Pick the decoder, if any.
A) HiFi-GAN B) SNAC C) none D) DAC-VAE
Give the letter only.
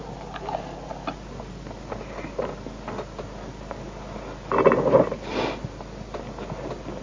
C